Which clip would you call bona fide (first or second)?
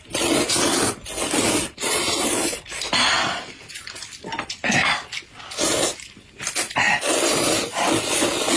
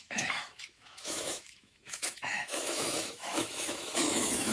first